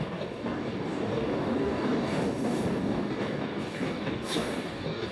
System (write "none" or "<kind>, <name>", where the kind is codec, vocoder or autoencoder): codec, DAC